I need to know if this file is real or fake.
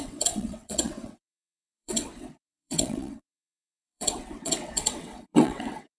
fake